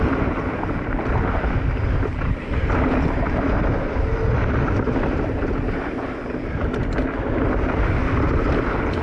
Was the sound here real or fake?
real